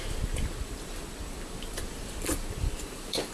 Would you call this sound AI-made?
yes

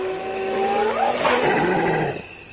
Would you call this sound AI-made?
no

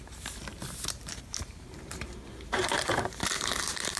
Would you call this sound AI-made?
yes